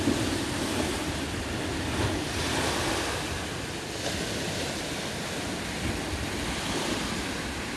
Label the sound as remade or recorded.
recorded